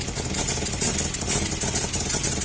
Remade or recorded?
recorded